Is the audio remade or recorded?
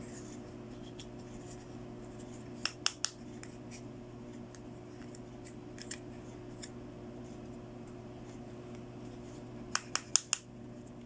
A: recorded